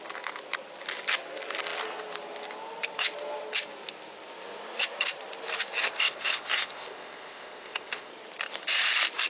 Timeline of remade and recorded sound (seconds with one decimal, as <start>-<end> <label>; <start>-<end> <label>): 0.0-5.8 recorded; 5.8-8.1 remade; 8.1-9.3 recorded